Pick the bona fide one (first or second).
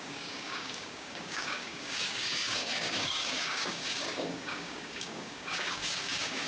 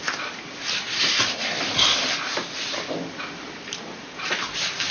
second